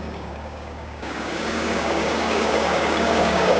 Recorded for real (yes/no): no